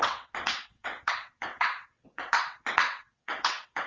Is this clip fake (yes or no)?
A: yes